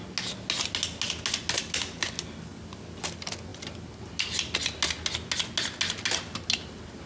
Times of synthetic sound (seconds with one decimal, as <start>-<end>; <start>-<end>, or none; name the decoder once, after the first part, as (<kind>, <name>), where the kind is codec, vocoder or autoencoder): none